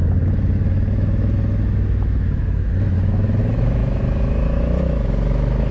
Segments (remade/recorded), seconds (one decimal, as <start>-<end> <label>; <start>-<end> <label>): 0.0-5.7 remade

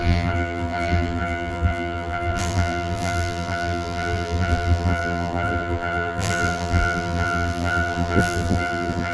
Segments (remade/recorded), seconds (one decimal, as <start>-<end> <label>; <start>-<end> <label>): 0.0-9.1 remade

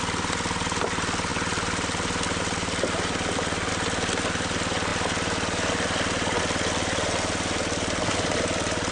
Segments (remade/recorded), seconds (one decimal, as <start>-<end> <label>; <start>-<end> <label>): 0.0-8.9 recorded

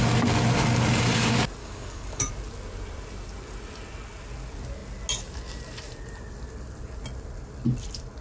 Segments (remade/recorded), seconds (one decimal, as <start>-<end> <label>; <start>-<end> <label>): 0.0-1.6 recorded; 1.6-2.3 remade; 2.3-8.2 recorded

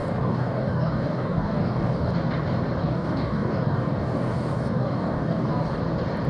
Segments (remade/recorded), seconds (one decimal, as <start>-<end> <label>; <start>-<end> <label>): 0.0-2.1 remade; 2.1-2.8 recorded; 2.8-5.8 remade; 5.8-6.3 recorded

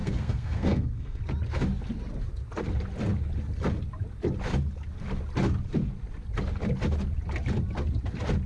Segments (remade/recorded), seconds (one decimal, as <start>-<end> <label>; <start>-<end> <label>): 0.0-1.2 remade; 1.2-8.5 recorded

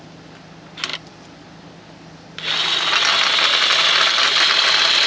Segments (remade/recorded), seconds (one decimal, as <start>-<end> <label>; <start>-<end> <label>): 0.0-5.1 recorded

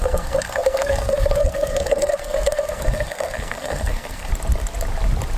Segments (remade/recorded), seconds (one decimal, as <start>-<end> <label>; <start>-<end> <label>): 0.0-4.3 remade; 4.3-5.4 recorded